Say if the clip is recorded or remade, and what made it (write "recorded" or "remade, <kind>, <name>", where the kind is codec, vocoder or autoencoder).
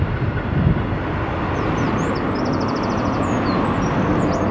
recorded